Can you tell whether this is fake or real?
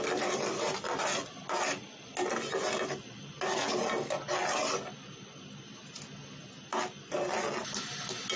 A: real